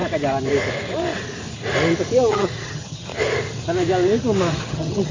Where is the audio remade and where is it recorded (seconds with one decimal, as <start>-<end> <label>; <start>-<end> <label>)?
0.0-2.3 recorded; 2.3-3.1 remade; 3.1-4.5 recorded; 4.5-5.1 remade